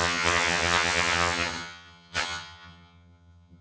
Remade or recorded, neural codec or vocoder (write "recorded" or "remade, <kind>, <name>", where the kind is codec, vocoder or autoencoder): remade, vocoder, HiFi-GAN